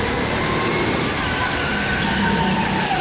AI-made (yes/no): no